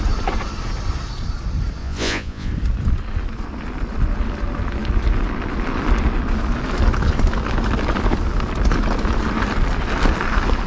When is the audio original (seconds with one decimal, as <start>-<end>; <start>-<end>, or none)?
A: 0.0-1.8; 2.5-10.7